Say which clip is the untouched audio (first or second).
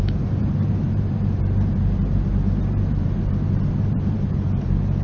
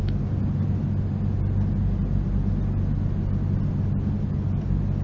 second